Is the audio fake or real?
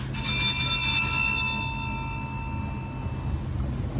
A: real